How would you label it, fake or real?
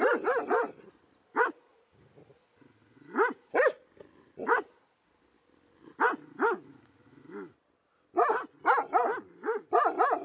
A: real